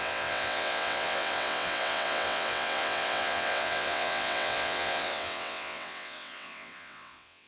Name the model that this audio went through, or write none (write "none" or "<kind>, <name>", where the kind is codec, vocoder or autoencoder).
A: vocoder, WaveNeXt